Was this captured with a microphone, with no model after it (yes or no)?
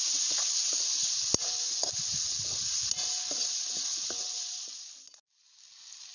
yes